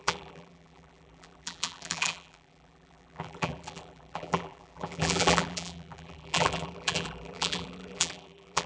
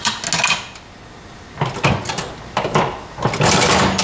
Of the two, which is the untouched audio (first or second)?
second